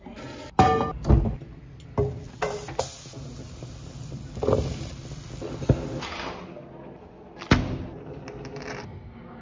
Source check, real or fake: real